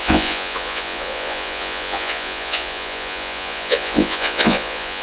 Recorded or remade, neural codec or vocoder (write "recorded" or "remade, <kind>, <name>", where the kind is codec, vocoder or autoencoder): remade, vocoder, Vocos